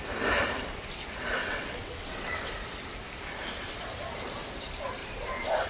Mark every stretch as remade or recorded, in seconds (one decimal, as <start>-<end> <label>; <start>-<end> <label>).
0.0-1.4 recorded; 1.4-2.5 remade; 2.5-5.7 recorded

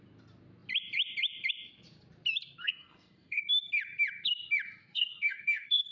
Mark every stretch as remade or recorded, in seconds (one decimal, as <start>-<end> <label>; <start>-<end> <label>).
0.0-2.6 recorded; 2.6-3.4 remade; 3.4-4.8 recorded; 4.8-5.9 remade